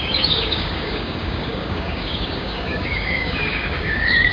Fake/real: fake